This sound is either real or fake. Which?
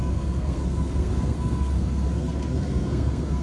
fake